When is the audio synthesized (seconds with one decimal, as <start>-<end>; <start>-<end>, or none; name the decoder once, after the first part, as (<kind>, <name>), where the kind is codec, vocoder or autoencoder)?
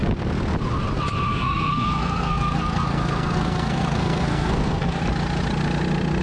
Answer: 1.3-5.0 (codec, SNAC)